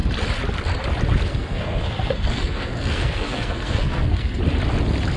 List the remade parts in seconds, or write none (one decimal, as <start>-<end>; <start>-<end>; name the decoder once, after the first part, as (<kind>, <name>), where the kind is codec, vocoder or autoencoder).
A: 1.3-4.4 (codec, SNAC)